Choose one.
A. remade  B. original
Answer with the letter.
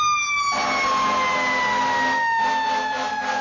B